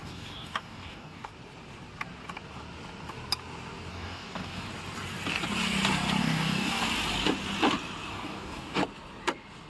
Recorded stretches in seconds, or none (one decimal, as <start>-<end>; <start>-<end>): 1.3-3.9; 4.7-6.2; 6.8-8.1; 8.8-9.7